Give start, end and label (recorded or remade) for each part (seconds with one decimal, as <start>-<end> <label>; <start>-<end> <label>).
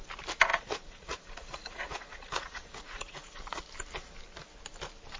0.0-0.5 recorded; 0.5-3.6 remade; 3.6-5.2 recorded